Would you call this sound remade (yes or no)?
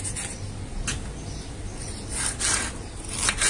no